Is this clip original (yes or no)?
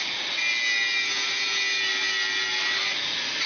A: yes